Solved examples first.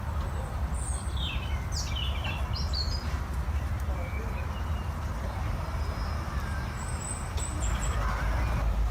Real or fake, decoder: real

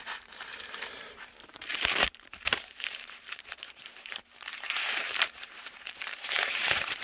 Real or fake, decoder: fake, vocoder, BigVGAN v2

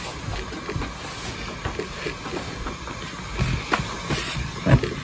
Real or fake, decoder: real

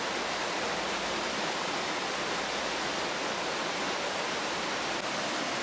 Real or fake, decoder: real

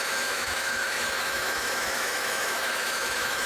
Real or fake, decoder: fake, autoencoder, DAC-VAE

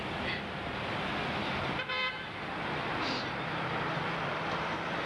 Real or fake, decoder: real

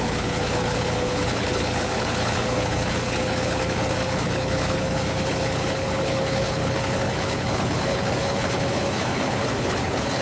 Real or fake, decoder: fake, codec, HILCodec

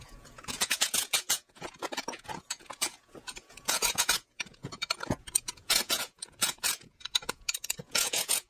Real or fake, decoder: fake, vocoder, Vocos